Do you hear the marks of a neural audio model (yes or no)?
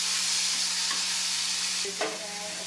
no